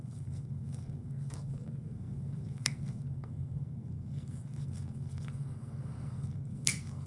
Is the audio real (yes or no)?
no